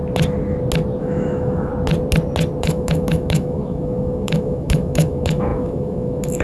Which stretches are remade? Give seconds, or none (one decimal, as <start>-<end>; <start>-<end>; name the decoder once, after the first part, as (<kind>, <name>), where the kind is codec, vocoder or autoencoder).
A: 1.0-1.7 (autoencoder, DAC-VAE); 2.6-6.4